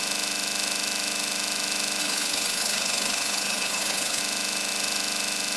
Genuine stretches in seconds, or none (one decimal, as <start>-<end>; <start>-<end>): 0.0-2.0; 4.2-5.6